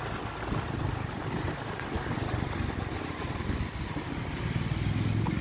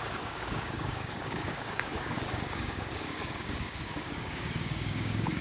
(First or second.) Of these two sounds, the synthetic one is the second